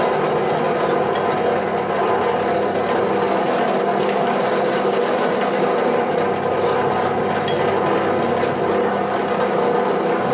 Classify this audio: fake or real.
real